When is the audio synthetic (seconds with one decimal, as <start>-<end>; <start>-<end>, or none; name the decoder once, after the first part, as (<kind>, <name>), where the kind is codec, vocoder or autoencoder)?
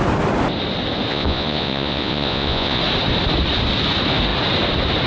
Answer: 1.1-2.8 (vocoder, Vocos)